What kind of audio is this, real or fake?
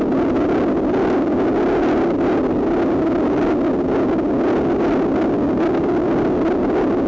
real